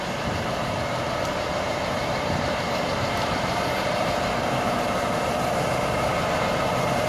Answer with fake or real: fake